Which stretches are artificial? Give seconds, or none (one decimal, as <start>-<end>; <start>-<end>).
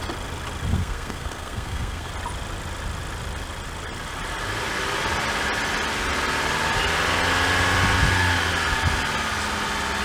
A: 0.7-2.1